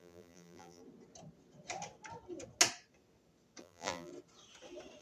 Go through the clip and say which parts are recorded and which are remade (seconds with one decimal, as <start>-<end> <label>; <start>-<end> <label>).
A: 0.0-0.8 remade; 0.8-3.6 recorded; 3.6-4.1 remade; 4.1-5.0 recorded

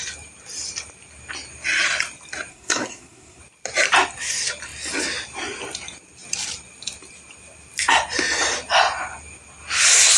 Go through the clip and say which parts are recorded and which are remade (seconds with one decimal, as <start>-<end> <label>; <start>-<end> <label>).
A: 0.0-2.5 recorded; 2.5-3.4 remade; 3.4-10.2 recorded

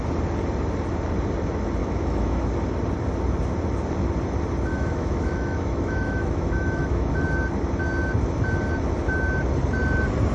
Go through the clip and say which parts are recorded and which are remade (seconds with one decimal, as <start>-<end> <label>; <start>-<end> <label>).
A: 0.0-1.8 recorded; 1.8-2.4 remade; 2.4-4.7 recorded; 4.7-7.1 remade; 7.1-10.3 recorded

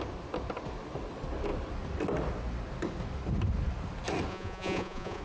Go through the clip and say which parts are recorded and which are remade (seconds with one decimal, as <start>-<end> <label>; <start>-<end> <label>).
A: 0.0-4.3 recorded; 4.3-5.2 remade

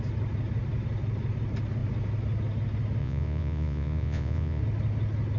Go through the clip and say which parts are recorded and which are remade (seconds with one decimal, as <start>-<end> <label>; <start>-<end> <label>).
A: 0.0-3.0 recorded; 3.0-4.6 remade; 4.6-5.4 recorded

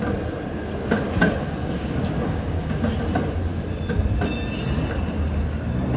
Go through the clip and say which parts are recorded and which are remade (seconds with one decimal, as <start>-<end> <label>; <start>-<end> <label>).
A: 0.0-1.6 recorded; 1.6-2.8 remade; 2.8-6.0 recorded